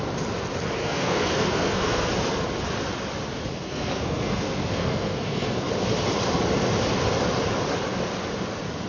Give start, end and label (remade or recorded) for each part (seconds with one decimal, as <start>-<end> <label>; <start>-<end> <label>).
0.0-0.8 recorded; 0.8-2.1 remade; 2.1-3.5 recorded; 3.5-5.7 remade; 5.7-8.9 recorded